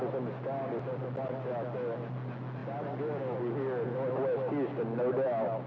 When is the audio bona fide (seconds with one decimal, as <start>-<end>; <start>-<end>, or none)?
0.0-5.7